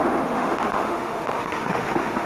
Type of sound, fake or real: fake